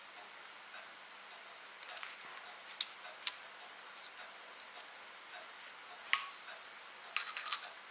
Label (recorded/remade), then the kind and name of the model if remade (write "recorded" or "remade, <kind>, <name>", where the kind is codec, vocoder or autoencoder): recorded